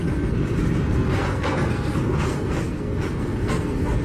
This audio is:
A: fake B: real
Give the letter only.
A